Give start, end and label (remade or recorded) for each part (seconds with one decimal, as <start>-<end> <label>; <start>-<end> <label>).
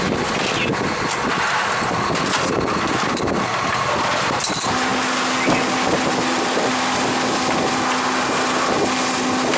0.0-9.6 recorded